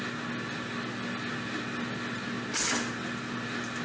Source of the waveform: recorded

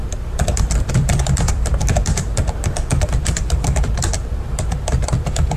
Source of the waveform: remade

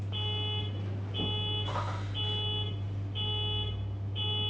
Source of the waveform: recorded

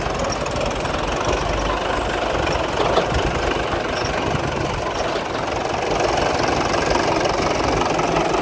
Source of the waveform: recorded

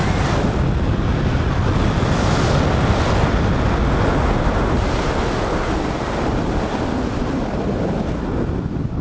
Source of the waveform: recorded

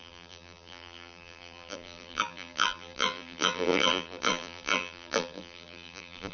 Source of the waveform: remade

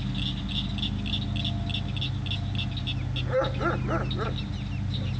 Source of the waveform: recorded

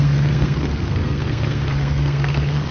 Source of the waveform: remade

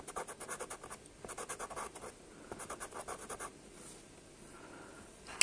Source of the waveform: recorded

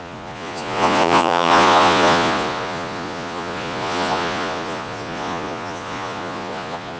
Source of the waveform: remade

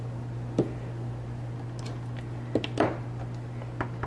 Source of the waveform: recorded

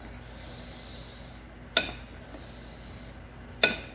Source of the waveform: recorded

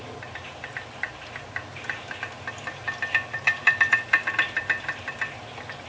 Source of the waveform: recorded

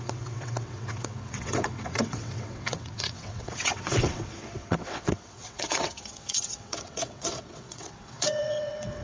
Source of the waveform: remade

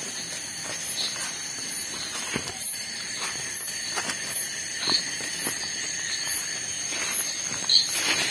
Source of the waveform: recorded